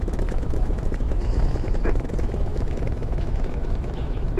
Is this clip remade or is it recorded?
remade